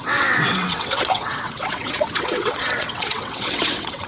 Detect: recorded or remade remade